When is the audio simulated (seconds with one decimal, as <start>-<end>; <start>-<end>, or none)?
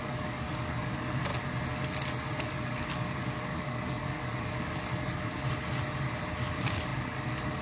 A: 0.0-1.3; 2.4-5.3; 6.5-7.6